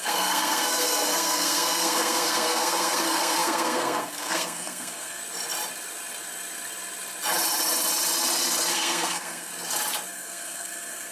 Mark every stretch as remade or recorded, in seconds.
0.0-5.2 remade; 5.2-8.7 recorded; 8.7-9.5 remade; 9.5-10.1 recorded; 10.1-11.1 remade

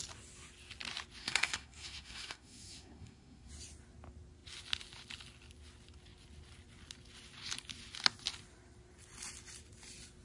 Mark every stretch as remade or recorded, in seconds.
0.0-1.2 recorded; 1.2-3.5 remade; 3.5-10.2 recorded

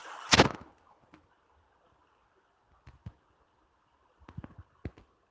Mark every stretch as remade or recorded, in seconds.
0.0-5.3 recorded

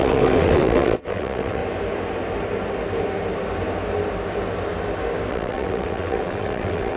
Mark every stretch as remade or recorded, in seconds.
0.0-1.6 remade; 1.6-5.3 recorded; 5.3-7.0 remade

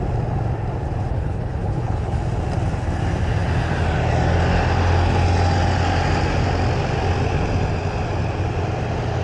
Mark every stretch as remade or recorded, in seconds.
0.0-1.1 recorded; 1.1-2.2 remade; 2.2-9.2 recorded

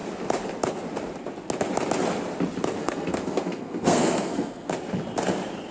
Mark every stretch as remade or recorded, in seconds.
0.0-2.8 recorded; 2.8-4.7 remade; 4.7-5.7 recorded